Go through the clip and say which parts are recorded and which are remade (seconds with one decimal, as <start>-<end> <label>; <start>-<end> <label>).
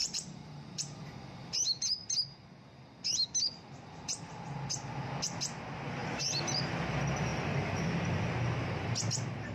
0.0-0.8 remade; 0.8-6.0 recorded; 6.0-6.7 remade; 6.7-9.5 recorded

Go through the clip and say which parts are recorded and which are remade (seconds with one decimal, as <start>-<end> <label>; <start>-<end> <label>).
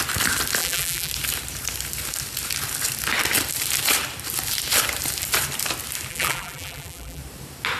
0.0-0.6 recorded; 0.6-1.1 remade; 1.1-6.1 recorded; 6.1-7.2 remade; 7.2-7.8 recorded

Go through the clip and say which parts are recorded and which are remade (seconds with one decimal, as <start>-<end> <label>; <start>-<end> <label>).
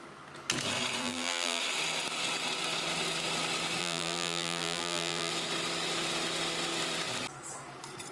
0.0-1.0 recorded; 1.0-1.6 remade; 1.6-3.8 recorded; 3.8-5.3 remade; 5.3-8.1 recorded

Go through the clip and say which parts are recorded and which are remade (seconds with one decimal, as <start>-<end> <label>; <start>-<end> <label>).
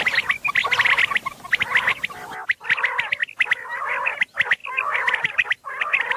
0.0-6.2 recorded